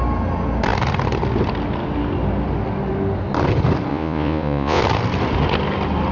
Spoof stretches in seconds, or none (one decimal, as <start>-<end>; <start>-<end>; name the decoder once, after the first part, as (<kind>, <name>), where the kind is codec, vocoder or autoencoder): 3.9-4.8 (vocoder, Vocos)